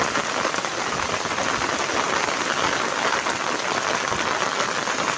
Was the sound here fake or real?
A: real